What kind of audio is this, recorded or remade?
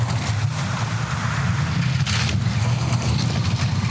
recorded